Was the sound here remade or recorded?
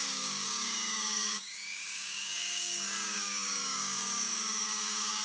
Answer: remade